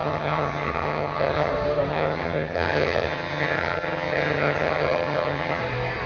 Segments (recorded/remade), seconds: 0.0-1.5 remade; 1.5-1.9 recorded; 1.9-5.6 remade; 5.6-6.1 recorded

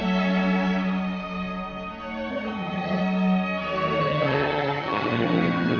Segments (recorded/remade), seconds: 0.0-2.3 recorded; 2.3-3.0 remade; 3.0-4.0 recorded; 4.0-5.8 remade

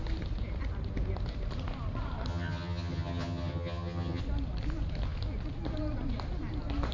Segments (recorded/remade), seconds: 0.0-2.3 recorded; 2.3-4.2 remade; 4.2-6.9 recorded

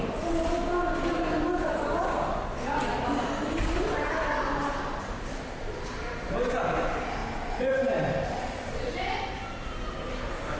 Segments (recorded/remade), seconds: 0.0-10.6 recorded

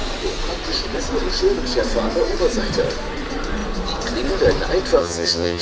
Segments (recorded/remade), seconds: 0.0-5.0 recorded; 5.0-5.6 remade

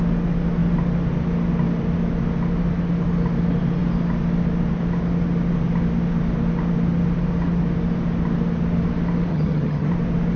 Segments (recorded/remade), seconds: 0.0-9.3 recorded; 9.3-9.9 remade; 9.9-10.4 recorded